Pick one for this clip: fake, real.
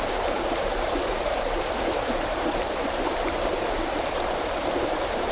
fake